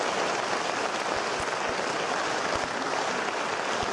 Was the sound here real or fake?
real